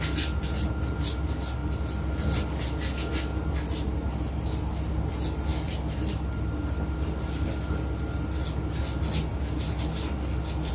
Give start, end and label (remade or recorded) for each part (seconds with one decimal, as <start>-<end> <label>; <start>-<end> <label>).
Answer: 0.0-1.6 recorded; 1.6-4.8 remade; 4.8-5.5 recorded; 5.5-8.4 remade; 8.4-9.3 recorded; 9.3-10.7 remade